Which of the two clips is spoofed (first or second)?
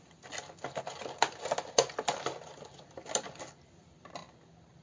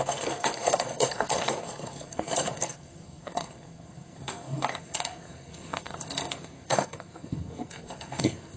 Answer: second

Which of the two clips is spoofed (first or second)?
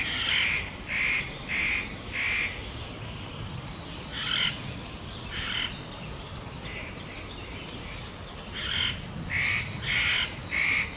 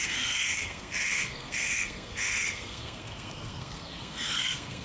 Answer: second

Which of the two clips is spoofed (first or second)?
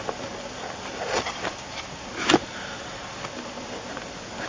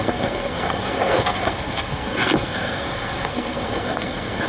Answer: second